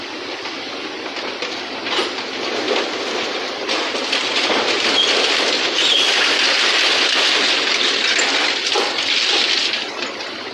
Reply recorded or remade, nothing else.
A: recorded